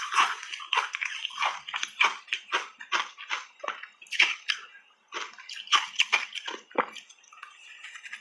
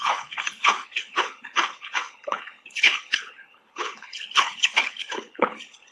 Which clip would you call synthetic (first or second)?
second